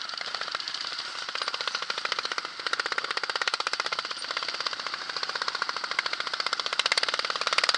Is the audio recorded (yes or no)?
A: no